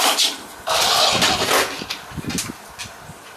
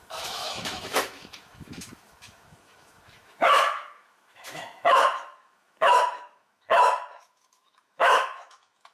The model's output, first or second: second